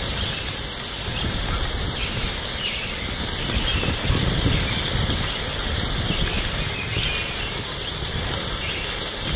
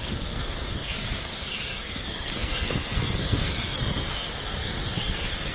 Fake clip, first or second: second